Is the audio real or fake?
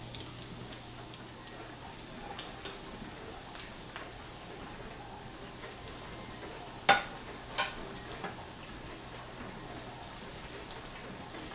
real